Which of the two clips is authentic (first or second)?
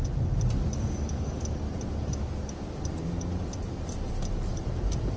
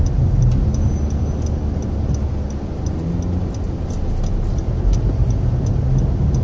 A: second